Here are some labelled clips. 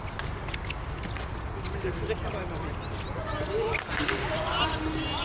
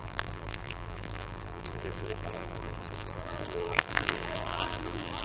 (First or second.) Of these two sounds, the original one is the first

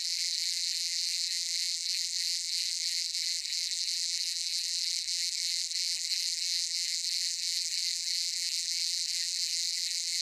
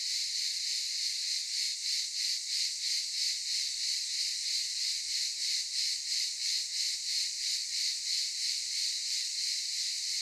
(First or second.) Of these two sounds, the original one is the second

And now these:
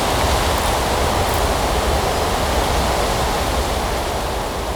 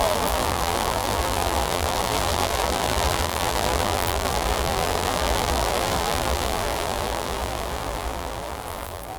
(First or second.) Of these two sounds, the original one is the first